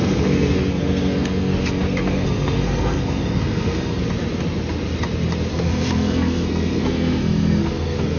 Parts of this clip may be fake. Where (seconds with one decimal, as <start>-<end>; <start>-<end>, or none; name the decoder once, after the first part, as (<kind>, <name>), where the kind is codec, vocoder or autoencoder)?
0.0-4.0 (codec, SNAC); 5.5-8.2